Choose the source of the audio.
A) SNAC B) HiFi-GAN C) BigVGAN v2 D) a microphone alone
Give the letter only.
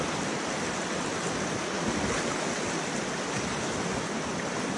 D